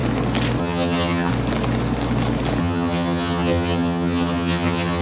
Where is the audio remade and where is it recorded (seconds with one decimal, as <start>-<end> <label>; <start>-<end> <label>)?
0.0-0.6 recorded; 0.6-1.3 remade; 1.3-2.6 recorded; 2.6-5.0 remade